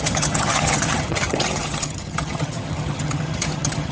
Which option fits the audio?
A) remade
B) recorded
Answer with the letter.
A